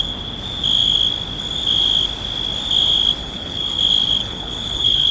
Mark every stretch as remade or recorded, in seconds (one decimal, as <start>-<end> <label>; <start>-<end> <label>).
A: 0.0-3.2 recorded; 3.2-3.8 remade; 3.8-4.2 recorded; 4.2-5.1 remade